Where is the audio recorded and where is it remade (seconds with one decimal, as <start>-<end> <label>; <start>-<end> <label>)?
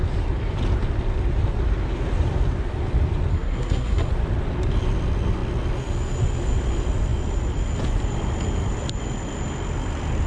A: 0.0-3.3 recorded; 3.3-4.1 remade; 4.1-10.3 recorded